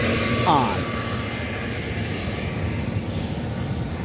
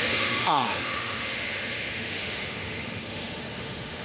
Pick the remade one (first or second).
second